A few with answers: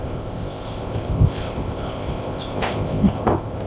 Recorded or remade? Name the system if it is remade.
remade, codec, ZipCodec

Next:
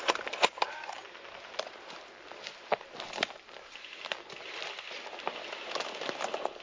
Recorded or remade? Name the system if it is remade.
recorded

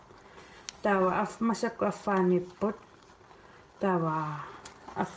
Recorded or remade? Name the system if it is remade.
recorded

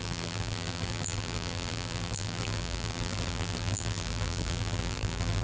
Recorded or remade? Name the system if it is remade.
remade, vocoder, BigVGAN v2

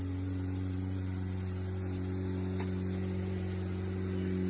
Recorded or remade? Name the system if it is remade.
recorded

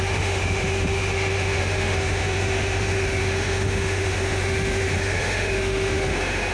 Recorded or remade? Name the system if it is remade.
remade, autoencoder, DAC-VAE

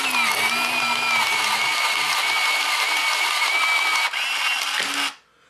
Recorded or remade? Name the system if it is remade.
recorded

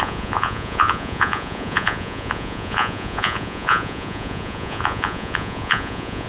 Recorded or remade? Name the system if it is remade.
remade, vocoder, Vocos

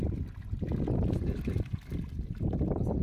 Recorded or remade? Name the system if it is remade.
recorded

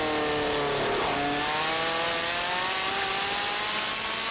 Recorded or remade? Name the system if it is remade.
recorded